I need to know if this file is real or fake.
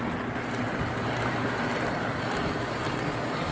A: real